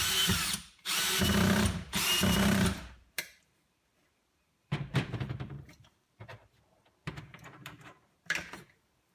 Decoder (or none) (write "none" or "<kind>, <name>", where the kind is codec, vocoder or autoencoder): vocoder, BigVGAN v2